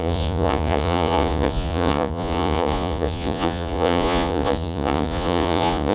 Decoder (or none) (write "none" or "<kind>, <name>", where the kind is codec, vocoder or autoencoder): vocoder, Vocos